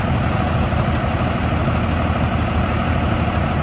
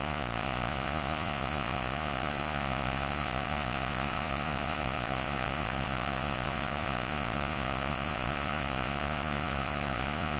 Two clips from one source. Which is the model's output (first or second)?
second